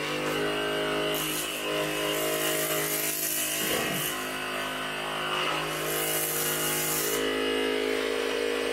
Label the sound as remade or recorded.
recorded